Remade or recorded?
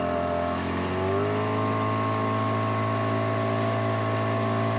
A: recorded